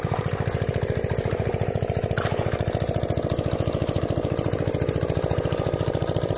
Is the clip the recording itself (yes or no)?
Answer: no